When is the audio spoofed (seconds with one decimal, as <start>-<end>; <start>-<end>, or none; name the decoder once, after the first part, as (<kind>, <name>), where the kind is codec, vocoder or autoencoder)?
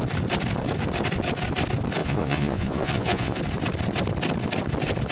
2.0-3.4 (vocoder, Vocos)